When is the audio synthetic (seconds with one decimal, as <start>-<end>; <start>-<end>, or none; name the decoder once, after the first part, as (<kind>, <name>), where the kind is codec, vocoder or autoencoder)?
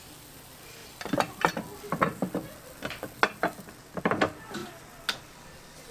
none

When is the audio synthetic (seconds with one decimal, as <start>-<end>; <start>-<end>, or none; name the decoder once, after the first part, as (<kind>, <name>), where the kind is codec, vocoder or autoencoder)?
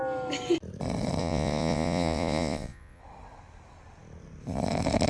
1.2-3.0 (vocoder, Vocos)